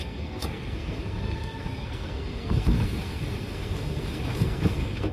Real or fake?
fake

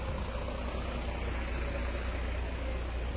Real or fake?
real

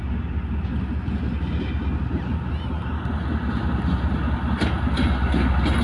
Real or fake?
real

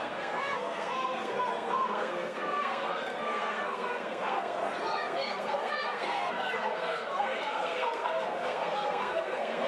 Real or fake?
fake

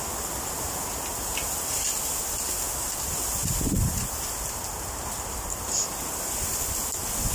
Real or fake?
real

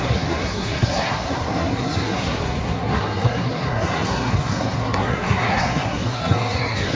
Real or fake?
fake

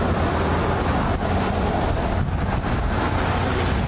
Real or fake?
real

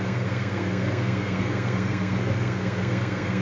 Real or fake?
fake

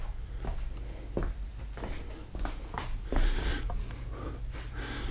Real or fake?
real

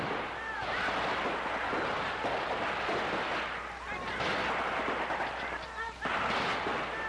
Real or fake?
real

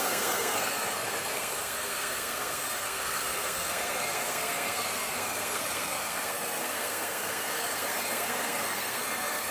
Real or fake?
fake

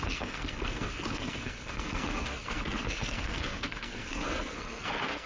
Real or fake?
fake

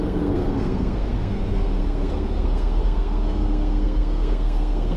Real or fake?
fake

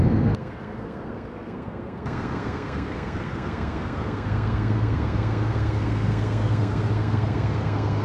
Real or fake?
fake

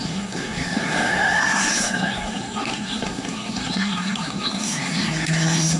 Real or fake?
fake